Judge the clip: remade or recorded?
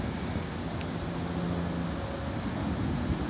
recorded